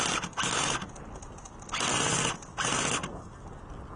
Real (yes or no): yes